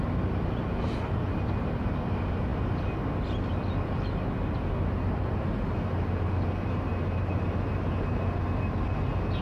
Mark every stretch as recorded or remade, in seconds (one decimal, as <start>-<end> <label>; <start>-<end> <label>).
0.0-9.4 recorded

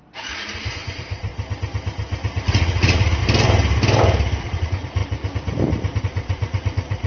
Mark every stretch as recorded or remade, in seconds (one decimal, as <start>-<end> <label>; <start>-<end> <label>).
0.0-1.3 remade; 1.3-2.5 recorded; 2.5-3.2 remade; 3.2-4.4 recorded; 4.4-5.0 remade; 5.0-6.0 recorded; 6.0-7.1 remade

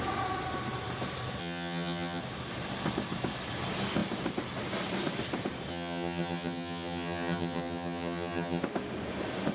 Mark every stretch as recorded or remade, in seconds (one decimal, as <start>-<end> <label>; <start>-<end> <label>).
0.0-1.4 recorded; 1.4-2.2 remade; 2.2-5.7 recorded; 5.7-8.6 remade; 8.6-9.5 recorded

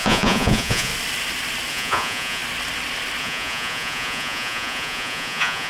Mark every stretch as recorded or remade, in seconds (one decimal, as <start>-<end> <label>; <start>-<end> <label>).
0.0-0.9 remade; 0.9-1.7 recorded; 1.7-2.4 remade; 2.4-3.2 recorded; 3.2-5.7 remade

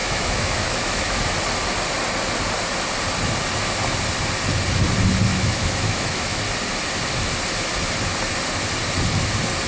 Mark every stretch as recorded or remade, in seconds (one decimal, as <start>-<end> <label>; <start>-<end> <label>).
0.0-1.2 remade; 1.2-5.3 recorded; 5.3-6.4 remade; 6.4-9.7 recorded

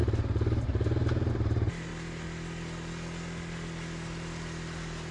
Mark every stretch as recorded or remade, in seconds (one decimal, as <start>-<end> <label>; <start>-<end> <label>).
0.0-1.9 remade; 1.9-5.1 recorded